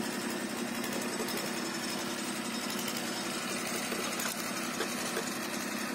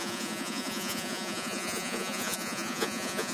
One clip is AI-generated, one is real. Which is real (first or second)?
first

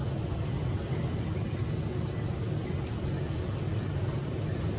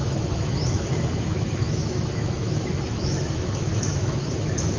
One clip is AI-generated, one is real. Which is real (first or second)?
first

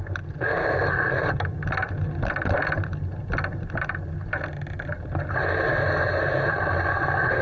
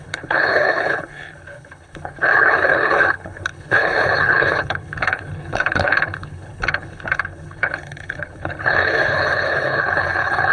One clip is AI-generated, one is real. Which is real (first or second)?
first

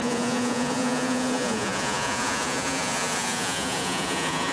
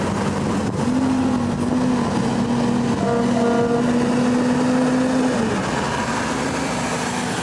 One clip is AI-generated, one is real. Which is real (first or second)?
second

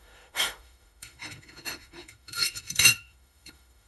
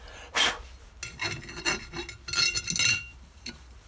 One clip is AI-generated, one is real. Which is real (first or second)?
second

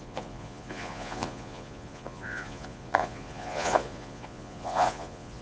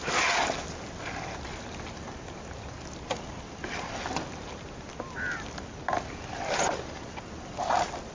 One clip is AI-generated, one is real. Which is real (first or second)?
second